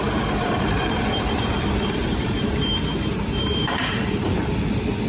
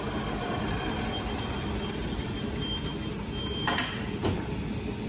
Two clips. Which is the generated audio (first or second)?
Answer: first